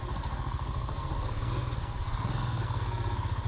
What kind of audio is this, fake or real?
fake